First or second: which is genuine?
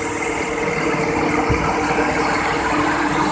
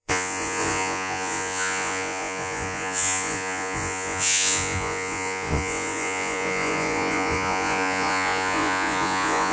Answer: first